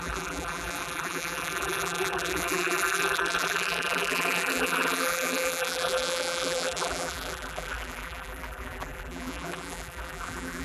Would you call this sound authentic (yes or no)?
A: no